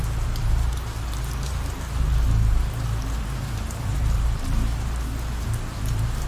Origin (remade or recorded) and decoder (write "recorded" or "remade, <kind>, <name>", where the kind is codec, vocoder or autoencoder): remade, vocoder, BigVGAN v2